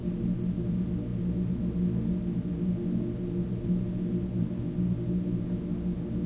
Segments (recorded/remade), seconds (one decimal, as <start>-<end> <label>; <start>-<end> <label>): 0.0-6.3 recorded